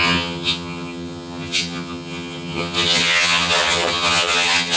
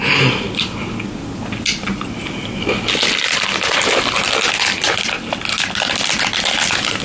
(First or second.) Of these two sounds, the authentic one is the second